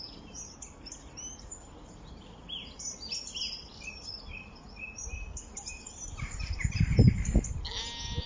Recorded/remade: recorded